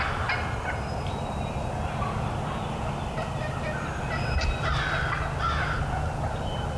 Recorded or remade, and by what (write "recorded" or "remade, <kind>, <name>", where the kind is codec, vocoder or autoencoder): recorded